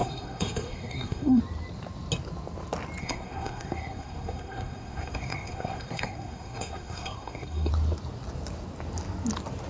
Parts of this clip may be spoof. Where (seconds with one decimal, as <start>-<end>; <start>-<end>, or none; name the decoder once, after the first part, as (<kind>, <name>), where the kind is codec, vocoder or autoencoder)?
0.0-1.4 (codec, SNAC); 3.0-7.7